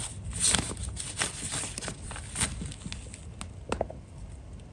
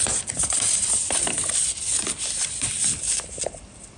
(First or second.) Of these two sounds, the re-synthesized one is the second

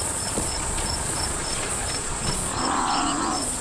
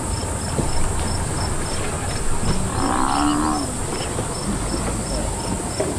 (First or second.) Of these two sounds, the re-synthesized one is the first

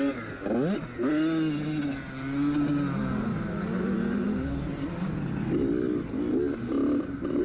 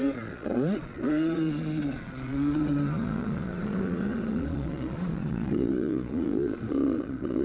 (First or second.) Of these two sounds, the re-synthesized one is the second